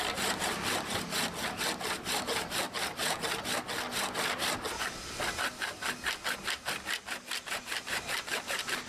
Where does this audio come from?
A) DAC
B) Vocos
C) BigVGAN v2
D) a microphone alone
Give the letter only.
D